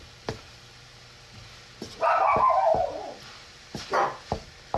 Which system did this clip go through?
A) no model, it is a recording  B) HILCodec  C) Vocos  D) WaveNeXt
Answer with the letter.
A